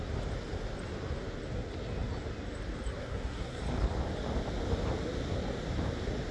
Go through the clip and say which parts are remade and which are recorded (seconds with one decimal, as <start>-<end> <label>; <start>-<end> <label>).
0.0-3.0 recorded; 3.0-3.6 remade; 3.6-6.3 recorded

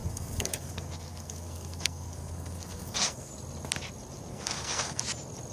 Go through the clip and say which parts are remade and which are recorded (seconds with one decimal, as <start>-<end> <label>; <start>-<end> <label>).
0.0-3.3 remade; 3.3-4.3 recorded; 4.3-5.0 remade; 5.0-5.5 recorded

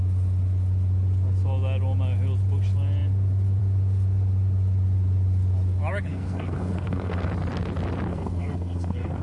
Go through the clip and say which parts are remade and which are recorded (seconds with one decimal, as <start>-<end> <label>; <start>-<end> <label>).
0.0-6.1 recorded; 6.1-7.3 remade; 7.3-8.1 recorded; 8.1-9.2 remade

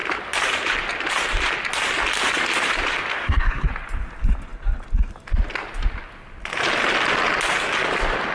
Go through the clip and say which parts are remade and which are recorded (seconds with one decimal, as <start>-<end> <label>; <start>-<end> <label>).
0.0-3.1 recorded; 3.1-3.7 remade; 3.7-8.3 recorded

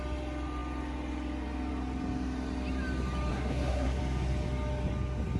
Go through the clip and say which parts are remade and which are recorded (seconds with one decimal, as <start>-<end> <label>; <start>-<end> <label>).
0.0-3.3 recorded; 3.3-4.0 remade; 4.0-5.4 recorded

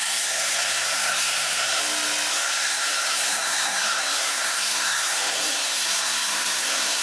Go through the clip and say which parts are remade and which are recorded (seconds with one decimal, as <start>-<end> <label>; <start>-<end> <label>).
0.0-1.8 remade; 1.8-2.3 recorded; 2.3-7.0 remade

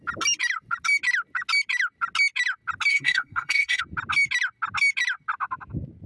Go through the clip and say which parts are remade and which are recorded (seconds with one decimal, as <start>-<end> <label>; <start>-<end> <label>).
0.0-2.9 recorded; 2.9-3.8 remade; 3.8-6.1 recorded